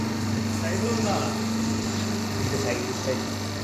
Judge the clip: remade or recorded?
recorded